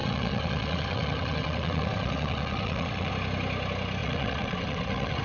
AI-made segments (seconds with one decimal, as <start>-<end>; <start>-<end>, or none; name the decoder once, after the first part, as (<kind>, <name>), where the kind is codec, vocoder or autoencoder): 0.0-3.1 (vocoder, WaveNeXt); 4.0-5.2